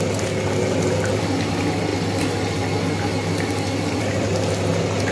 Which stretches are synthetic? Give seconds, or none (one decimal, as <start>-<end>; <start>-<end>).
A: none